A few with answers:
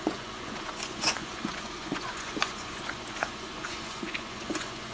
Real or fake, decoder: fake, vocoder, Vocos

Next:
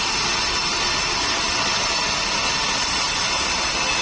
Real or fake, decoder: real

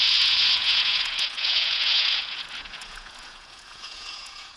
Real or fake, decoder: fake, vocoder, Vocos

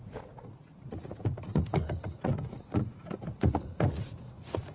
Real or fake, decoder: fake, vocoder, Vocos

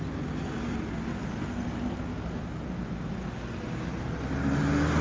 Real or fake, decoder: real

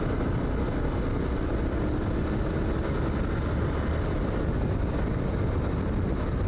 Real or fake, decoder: real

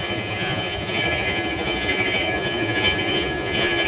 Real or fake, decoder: fake, vocoder, Vocos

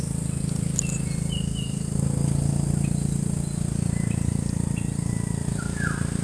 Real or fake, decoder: real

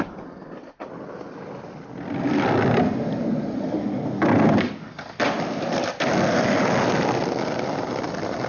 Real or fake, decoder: real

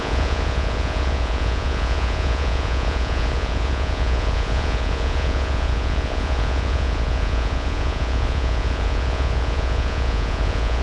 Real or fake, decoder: fake, vocoder, Vocos